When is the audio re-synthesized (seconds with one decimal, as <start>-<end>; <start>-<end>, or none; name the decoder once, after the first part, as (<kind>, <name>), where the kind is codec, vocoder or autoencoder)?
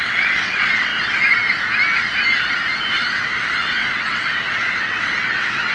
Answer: 0.0-0.9 (vocoder, WaveNeXt); 2.9-5.7